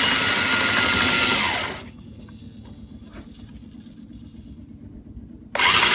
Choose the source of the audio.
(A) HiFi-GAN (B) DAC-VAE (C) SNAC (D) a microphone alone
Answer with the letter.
D